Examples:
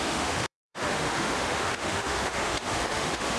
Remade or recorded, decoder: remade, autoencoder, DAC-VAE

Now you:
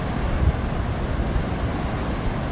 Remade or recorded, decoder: recorded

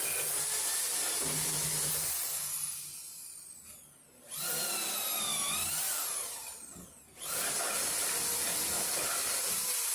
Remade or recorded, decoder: recorded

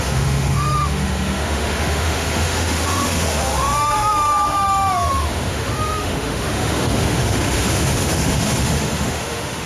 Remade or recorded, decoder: remade, autoencoder, DAC-VAE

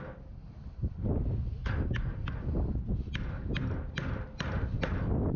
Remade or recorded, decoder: recorded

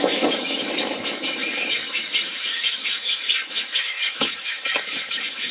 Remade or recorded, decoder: remade, autoencoder, DAC-VAE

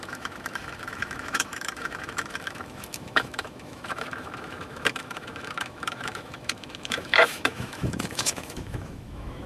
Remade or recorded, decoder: remade, autoencoder, DAC-VAE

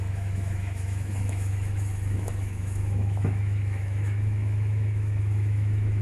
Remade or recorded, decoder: remade, autoencoder, DAC-VAE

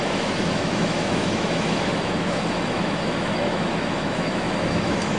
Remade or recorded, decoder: remade, autoencoder, DAC-VAE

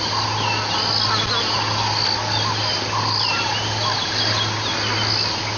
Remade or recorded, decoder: recorded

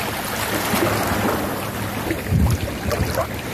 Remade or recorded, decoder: recorded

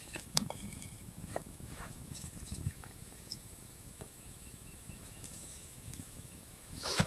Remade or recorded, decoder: remade, autoencoder, DAC-VAE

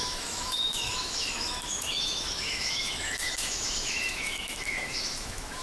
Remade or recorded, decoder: remade, autoencoder, DAC-VAE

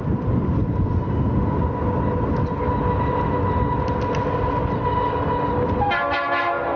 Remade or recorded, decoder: recorded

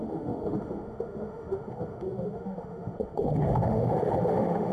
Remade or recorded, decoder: remade, autoencoder, DAC-VAE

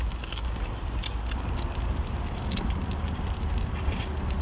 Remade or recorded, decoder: recorded